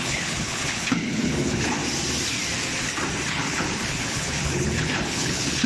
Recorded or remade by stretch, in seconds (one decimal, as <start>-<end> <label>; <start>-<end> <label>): 0.0-1.8 remade; 1.8-3.3 recorded; 3.3-5.7 remade

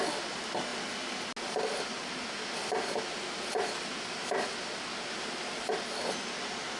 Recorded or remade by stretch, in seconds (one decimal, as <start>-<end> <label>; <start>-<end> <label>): 0.0-6.8 recorded